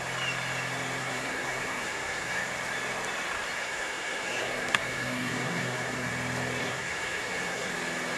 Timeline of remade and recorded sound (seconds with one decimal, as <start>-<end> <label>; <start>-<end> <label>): 0.0-1.0 recorded; 1.0-2.4 remade; 2.4-3.6 recorded; 3.6-6.1 remade; 6.1-6.6 recorded; 6.6-7.7 remade; 7.7-8.2 recorded